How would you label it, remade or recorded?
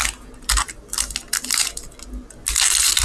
recorded